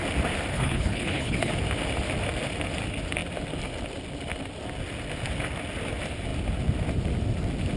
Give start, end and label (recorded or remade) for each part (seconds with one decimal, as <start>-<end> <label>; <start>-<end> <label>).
0.0-0.5 recorded; 0.5-1.5 remade; 1.5-7.8 recorded